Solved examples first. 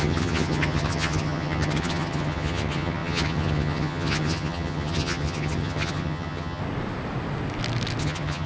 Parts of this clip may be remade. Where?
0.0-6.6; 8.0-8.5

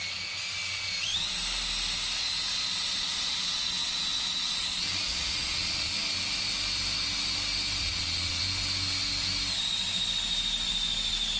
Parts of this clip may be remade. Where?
2.8-5.9; 7.8-8.4

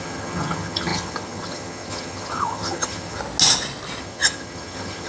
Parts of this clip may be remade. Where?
0.0-3.2; 4.0-5.1

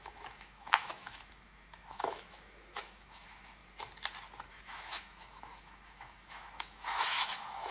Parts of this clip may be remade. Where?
0.0-3.6; 4.5-7.7

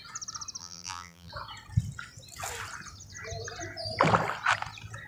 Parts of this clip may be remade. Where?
0.6-1.3

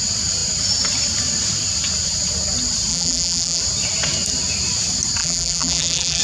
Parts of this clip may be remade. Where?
2.9-3.6; 5.2-6.2

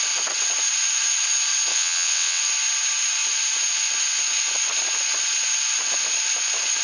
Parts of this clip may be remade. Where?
1.7-2.4